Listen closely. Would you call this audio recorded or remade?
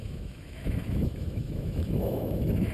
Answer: remade